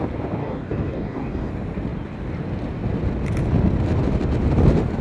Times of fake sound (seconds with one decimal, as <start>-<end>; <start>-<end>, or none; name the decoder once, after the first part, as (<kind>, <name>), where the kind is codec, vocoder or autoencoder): 0.4-1.5 (codec, DAC)